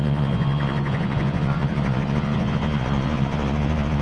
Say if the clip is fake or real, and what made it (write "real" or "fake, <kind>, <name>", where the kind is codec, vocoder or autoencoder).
fake, vocoder, Vocos